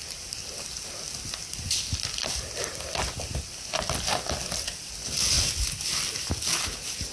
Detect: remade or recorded recorded